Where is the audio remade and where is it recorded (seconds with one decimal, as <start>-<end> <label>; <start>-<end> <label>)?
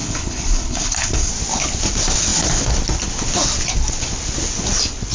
0.0-1.3 remade; 1.3-5.1 recorded